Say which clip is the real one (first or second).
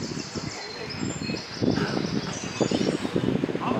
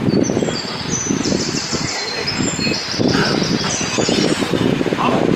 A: first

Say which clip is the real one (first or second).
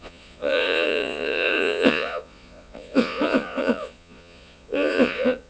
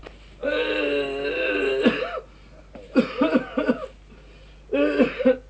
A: second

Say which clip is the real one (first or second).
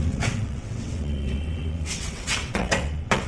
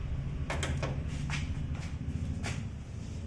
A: second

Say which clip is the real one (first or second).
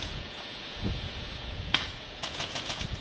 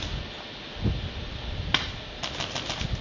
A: second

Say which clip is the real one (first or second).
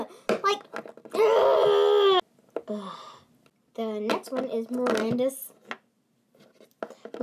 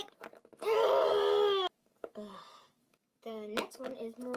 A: first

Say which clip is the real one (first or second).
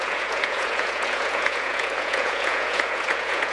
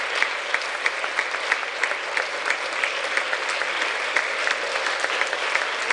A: second